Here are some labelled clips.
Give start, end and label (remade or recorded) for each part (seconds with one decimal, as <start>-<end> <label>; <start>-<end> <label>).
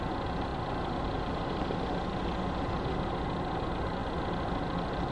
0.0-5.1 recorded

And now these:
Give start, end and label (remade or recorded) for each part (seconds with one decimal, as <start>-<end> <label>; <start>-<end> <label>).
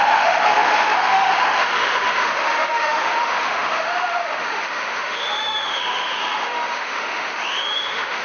0.0-8.2 remade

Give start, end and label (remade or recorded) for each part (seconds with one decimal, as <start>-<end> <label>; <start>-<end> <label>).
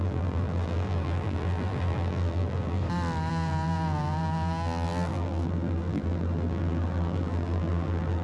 0.0-2.8 remade; 2.8-3.3 recorded; 3.3-8.2 remade